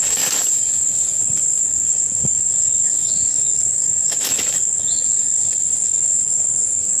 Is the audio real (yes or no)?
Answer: no